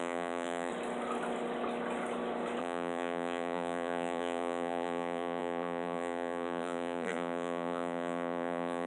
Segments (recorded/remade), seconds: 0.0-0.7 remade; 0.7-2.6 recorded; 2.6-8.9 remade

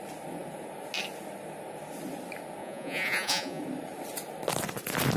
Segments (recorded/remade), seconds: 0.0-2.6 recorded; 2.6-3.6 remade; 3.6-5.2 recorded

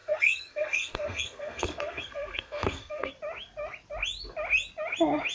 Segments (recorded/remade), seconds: 0.0-3.1 remade; 3.1-5.3 recorded

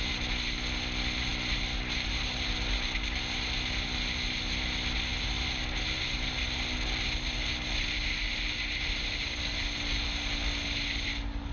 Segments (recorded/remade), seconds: 0.0-11.5 recorded

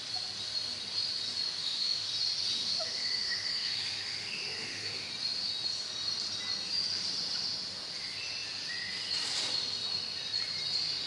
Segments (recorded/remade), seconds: 0.0-1.6 recorded; 1.6-2.1 remade; 2.1-2.6 recorded; 2.6-5.1 remade; 5.1-11.1 recorded